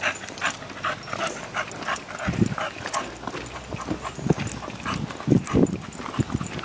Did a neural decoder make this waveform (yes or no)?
no